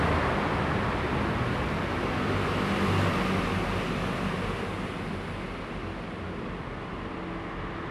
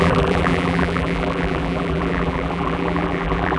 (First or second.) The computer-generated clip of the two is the second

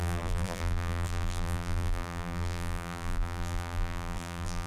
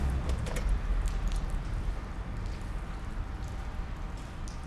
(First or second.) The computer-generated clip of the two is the first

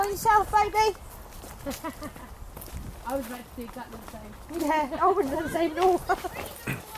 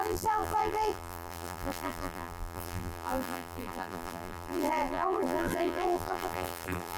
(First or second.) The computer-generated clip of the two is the second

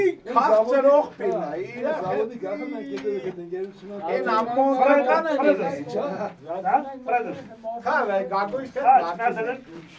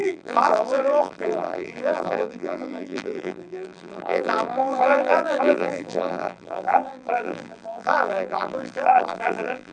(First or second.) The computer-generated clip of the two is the second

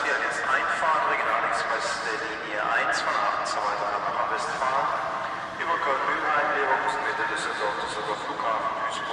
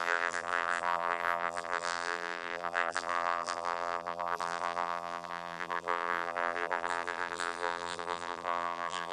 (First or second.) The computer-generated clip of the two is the second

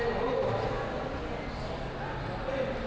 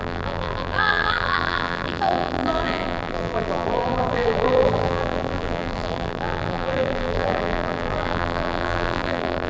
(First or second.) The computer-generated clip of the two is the second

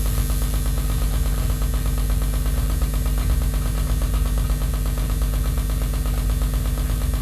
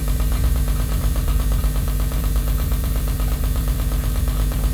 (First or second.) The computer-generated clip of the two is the second